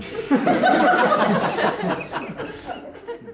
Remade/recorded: recorded